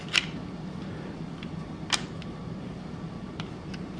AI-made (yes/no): no